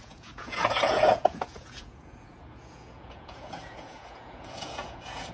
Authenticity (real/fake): fake